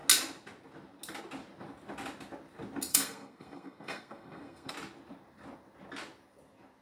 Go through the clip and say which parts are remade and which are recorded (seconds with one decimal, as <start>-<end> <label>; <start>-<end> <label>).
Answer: 0.0-2.9 recorded; 2.9-4.7 remade; 4.7-6.8 recorded

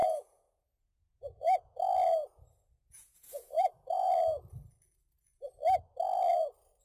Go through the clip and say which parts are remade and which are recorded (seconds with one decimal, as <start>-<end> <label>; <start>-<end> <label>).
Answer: 0.0-1.9 remade; 1.9-2.3 recorded; 2.3-4.1 remade; 4.1-6.8 recorded

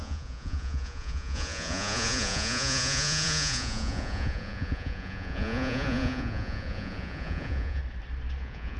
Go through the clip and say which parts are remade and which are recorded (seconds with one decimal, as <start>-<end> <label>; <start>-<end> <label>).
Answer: 0.0-7.8 remade; 7.8-8.4 recorded; 8.4-8.8 remade